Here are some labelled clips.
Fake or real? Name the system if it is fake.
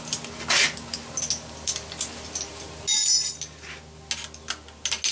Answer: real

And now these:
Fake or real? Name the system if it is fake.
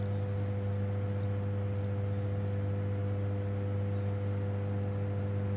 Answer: real